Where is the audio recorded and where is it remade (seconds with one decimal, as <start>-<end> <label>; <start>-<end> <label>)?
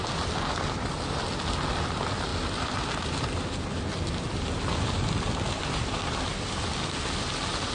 0.0-7.7 recorded